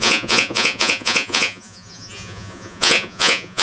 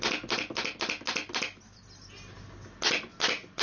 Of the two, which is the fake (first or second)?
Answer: first